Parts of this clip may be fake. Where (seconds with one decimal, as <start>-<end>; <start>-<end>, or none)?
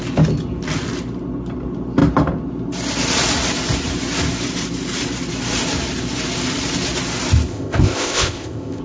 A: 7.5-8.8